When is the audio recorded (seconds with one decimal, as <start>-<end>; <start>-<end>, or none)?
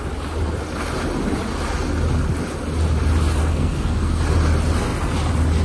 0.0-3.4; 4.2-5.6